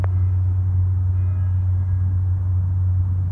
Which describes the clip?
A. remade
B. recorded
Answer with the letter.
B